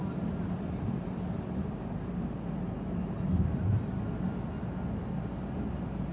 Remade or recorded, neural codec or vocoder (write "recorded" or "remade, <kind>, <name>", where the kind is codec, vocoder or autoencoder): recorded